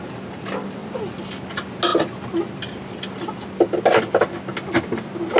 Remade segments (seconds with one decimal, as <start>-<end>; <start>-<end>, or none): none